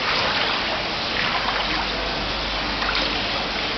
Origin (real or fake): fake